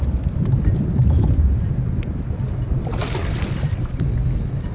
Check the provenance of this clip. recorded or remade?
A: recorded